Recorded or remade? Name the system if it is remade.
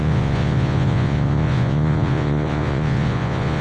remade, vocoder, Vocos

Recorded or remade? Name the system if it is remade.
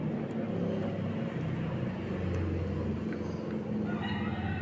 recorded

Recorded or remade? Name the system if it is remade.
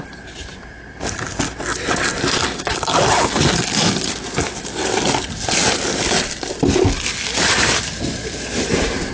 recorded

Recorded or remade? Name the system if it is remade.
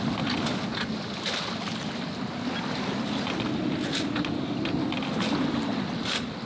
recorded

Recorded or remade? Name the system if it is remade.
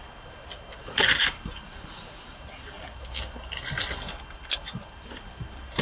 recorded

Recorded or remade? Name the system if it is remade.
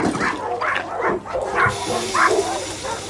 recorded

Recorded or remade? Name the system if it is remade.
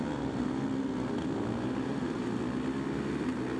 recorded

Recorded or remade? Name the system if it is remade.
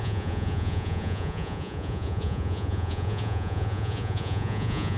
remade, vocoder, Vocos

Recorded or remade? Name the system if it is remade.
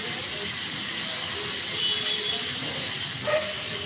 recorded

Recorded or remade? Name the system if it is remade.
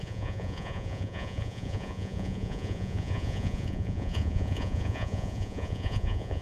remade, vocoder, Vocos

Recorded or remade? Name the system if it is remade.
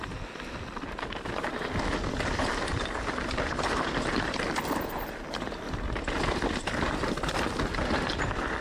recorded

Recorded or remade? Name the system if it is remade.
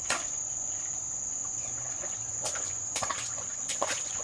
remade, vocoder, Vocos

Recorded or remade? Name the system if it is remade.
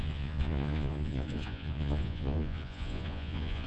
remade, vocoder, Vocos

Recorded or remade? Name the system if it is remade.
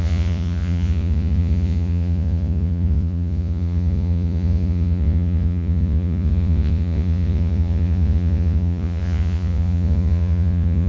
remade, vocoder, Vocos